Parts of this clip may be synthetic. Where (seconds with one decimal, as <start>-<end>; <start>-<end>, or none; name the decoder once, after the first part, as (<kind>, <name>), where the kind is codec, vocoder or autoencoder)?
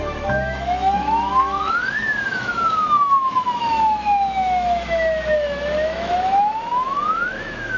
0.0-7.8 (autoencoder, DAC-VAE)